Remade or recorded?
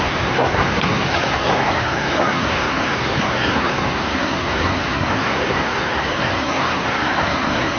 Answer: remade